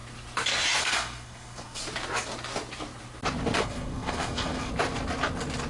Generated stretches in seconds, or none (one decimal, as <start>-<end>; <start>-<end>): 0.8-1.8; 3.6-4.7